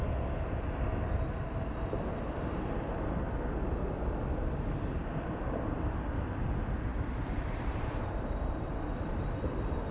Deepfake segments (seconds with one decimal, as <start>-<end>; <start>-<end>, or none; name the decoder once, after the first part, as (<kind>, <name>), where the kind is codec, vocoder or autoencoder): 6.9-8.7 (vocoder, BigVGAN v2)